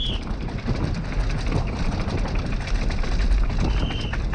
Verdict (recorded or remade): recorded